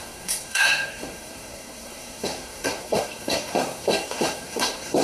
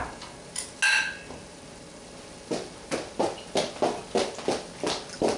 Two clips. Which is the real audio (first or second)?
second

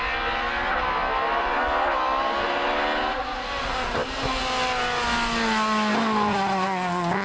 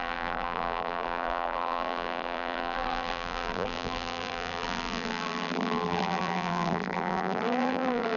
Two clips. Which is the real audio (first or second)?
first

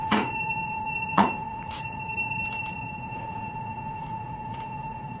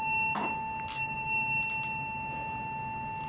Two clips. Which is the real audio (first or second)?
second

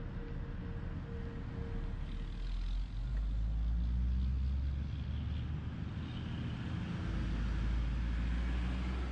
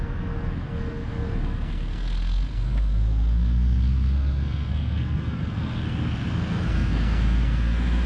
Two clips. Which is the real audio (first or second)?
first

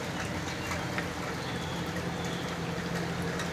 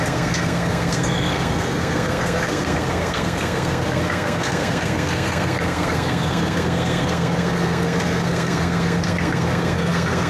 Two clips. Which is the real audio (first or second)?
first